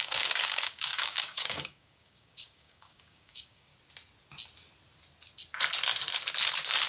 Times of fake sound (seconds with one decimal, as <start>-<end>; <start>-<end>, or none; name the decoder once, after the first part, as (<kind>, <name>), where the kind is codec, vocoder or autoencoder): 0.0-3.7 (codec, DAC)